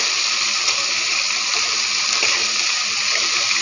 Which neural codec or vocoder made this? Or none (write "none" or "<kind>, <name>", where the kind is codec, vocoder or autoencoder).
vocoder, BigVGAN v2